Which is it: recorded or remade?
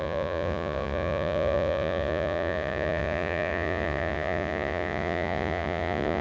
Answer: remade